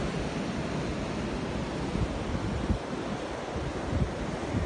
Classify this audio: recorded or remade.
recorded